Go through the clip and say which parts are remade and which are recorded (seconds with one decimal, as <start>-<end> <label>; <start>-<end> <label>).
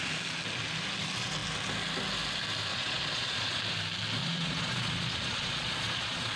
0.0-2.7 recorded; 2.7-3.6 remade; 3.6-4.2 recorded; 4.2-6.4 remade